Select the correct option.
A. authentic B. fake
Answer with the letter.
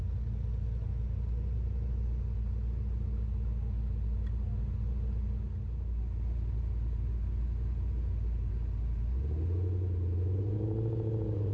A